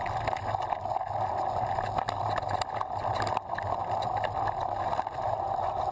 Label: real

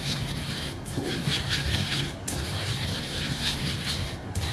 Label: fake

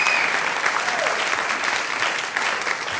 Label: fake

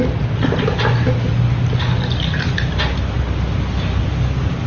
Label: real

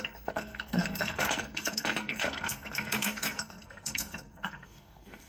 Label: fake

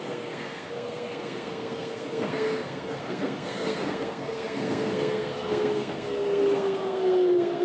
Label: fake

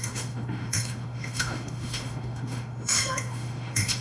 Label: fake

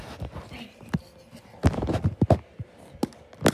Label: real